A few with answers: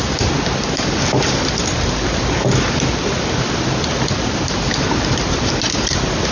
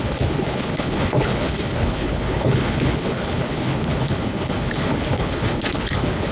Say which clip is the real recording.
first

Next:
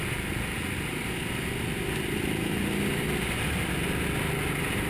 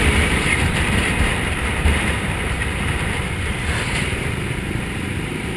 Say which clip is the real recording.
first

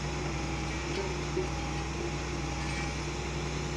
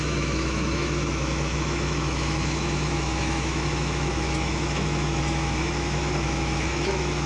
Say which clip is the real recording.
first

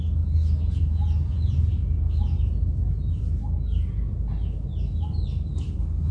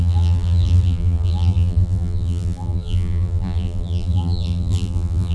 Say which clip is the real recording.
first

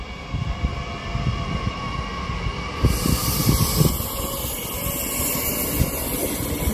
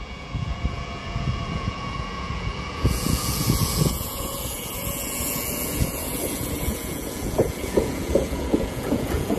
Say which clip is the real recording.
first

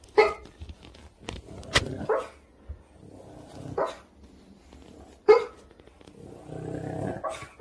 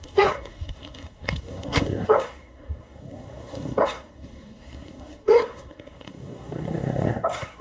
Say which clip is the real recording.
first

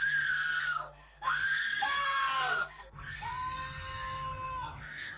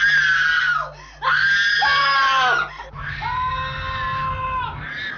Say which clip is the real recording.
second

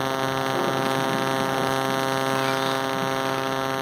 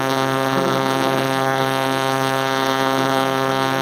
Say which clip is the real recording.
first